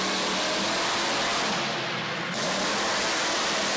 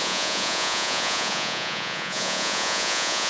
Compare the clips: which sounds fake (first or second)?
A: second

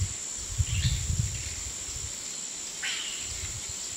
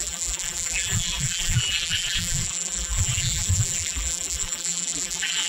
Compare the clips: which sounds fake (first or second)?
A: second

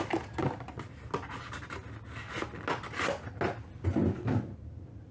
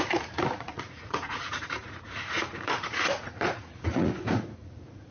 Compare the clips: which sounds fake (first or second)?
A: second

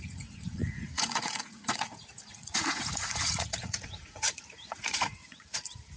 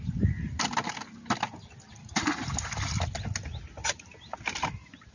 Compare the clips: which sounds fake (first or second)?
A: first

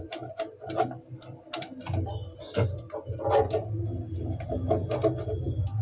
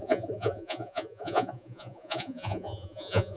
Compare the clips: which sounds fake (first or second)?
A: second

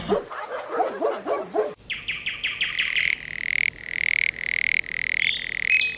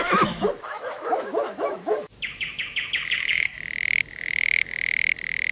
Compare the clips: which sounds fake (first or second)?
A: second